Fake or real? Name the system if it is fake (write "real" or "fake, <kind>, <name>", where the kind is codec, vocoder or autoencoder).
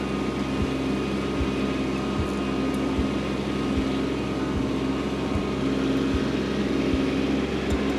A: real